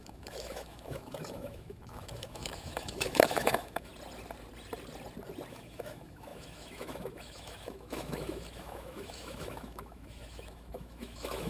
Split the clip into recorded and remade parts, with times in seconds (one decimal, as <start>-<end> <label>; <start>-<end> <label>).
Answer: 0.0-3.9 remade; 3.9-5.5 recorded; 5.5-11.5 remade